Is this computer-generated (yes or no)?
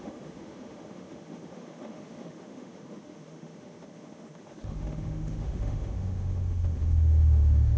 yes